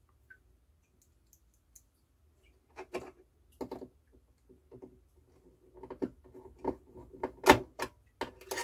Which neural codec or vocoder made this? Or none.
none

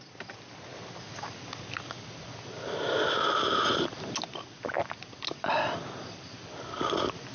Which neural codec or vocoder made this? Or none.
none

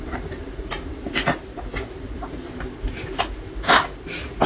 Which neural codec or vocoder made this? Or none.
none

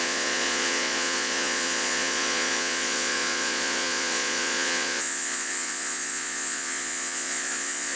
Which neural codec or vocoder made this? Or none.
vocoder, Vocos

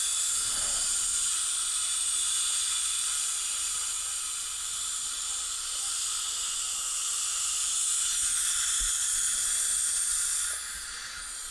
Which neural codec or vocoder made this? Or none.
none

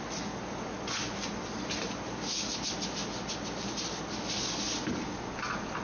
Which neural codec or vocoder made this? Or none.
none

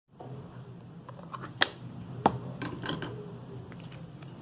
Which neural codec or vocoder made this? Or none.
none